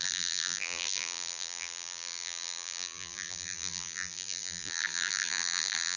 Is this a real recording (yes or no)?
no